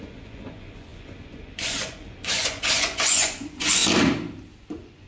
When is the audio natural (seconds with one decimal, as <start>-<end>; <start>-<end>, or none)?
3.8-4.6